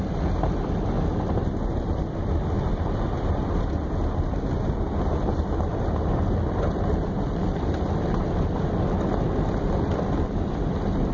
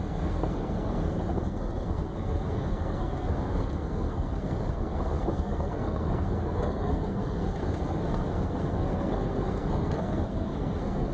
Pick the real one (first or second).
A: first